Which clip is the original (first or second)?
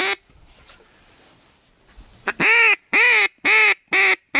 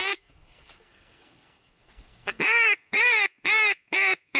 first